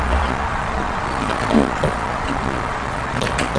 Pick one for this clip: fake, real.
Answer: fake